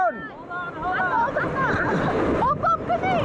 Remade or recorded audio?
recorded